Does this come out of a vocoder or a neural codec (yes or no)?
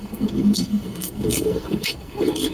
yes